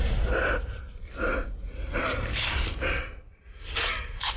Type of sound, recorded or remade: recorded